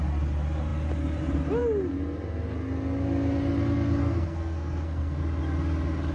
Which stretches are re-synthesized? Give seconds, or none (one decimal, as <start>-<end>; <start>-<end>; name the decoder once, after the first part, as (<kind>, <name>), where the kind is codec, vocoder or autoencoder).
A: 4.0-5.2 (codec, SNAC)